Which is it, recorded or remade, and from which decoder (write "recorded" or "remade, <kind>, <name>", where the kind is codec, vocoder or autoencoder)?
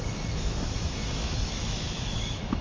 remade, autoencoder, DAC-VAE